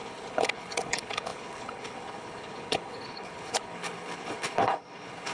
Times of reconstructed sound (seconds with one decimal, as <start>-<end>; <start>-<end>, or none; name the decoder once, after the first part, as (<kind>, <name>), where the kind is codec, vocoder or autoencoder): 0.0-5.3 (codec, HILCodec)